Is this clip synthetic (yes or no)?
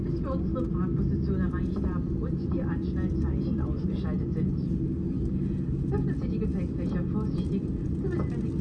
no